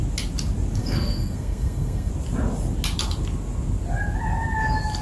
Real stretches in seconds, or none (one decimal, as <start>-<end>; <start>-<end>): 0.0-0.8; 2.1-5.0

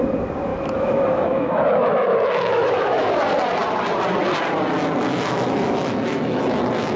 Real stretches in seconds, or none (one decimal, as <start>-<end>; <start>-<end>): 0.0-0.5; 3.1-5.1; 6.4-7.0

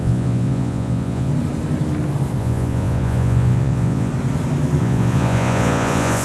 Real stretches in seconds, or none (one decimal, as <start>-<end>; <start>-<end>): 1.3-2.4; 4.1-4.8